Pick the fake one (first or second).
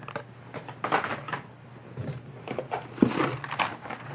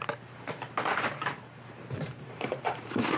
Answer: second